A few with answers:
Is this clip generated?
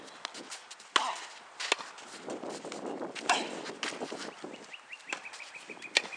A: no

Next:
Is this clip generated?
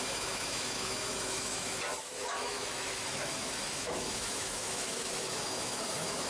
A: yes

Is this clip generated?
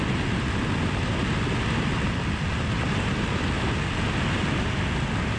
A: no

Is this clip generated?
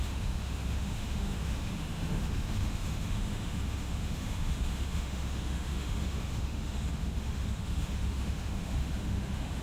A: yes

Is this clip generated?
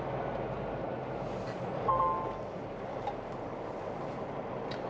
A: no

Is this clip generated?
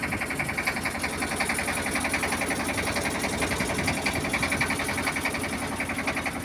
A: no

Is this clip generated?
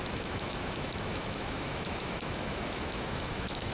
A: yes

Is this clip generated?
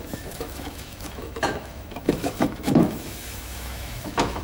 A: yes